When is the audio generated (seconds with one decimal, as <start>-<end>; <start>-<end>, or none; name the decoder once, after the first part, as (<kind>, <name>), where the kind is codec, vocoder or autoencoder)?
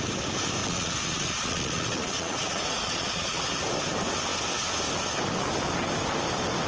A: 0.6-3.4 (vocoder, Vocos)